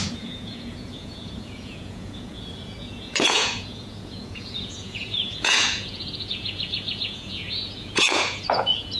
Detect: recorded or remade remade